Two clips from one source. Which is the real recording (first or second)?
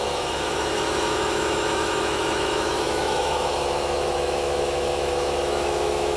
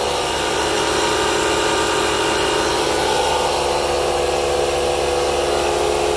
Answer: second